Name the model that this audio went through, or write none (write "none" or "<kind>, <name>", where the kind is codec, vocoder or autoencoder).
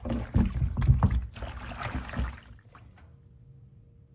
none